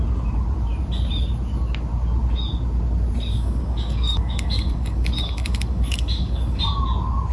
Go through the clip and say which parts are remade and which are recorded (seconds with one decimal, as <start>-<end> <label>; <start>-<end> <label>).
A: 0.0-3.3 recorded; 3.3-6.6 remade; 6.6-7.3 recorded